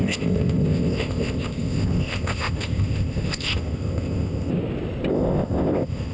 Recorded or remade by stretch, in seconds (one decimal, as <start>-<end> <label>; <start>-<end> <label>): 0.0-4.5 remade; 4.5-5.1 recorded; 5.1-6.1 remade